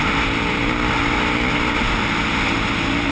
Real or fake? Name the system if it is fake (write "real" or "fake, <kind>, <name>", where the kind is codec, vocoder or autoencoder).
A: real